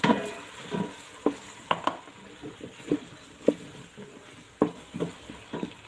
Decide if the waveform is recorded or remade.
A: recorded